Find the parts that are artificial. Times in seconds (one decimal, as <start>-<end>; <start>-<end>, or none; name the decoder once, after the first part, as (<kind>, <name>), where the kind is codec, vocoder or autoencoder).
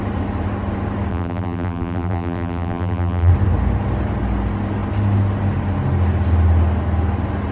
1.1-3.3 (vocoder, BigVGAN v2)